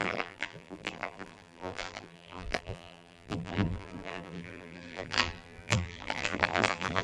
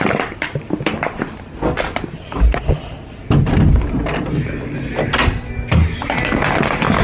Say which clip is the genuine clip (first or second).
second